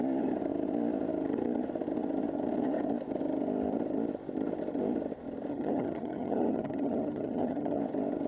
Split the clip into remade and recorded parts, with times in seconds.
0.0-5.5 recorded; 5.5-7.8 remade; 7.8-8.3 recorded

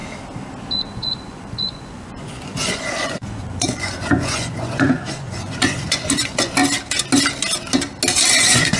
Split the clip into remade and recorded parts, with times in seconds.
0.0-0.7 recorded; 0.7-6.6 remade; 6.6-8.3 recorded; 8.3-8.8 remade

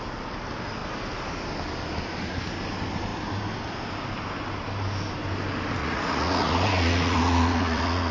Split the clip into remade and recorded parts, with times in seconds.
0.0-5.8 recorded; 5.8-8.1 remade

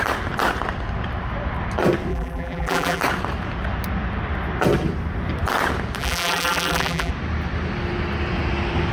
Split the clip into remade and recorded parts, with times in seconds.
0.0-2.1 recorded; 2.1-3.0 remade; 3.0-6.0 recorded; 6.0-7.1 remade; 7.1-8.9 recorded

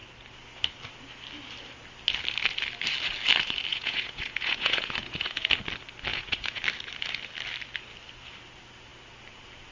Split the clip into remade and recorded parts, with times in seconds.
0.0-3.7 recorded; 3.7-5.5 remade; 5.5-6.1 recorded; 6.1-6.6 remade; 6.6-9.7 recorded

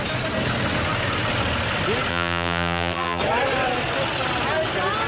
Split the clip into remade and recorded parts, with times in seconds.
0.0-2.1 recorded; 2.1-3.2 remade; 3.2-5.1 recorded

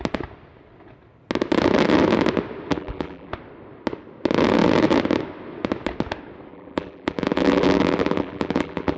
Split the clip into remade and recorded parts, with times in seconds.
0.0-2.7 recorded; 2.7-3.3 remade; 3.3-6.5 recorded; 6.5-9.0 remade